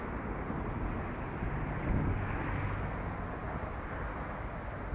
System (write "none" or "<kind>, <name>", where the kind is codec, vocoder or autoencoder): none